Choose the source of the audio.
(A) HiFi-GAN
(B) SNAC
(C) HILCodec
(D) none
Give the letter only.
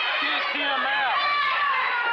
D